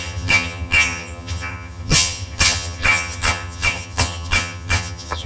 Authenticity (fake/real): fake